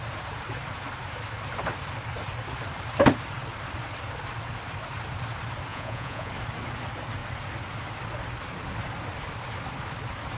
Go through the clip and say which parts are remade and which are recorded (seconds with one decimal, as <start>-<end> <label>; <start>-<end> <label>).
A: 0.0-5.7 recorded; 5.7-6.3 remade; 6.3-10.4 recorded